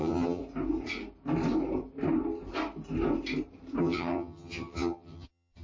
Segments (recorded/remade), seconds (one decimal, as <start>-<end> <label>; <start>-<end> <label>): 0.0-0.4 remade; 0.4-3.8 recorded; 3.8-5.6 remade